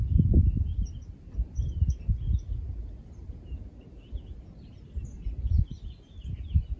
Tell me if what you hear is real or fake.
real